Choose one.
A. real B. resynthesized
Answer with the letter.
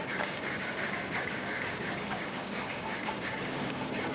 B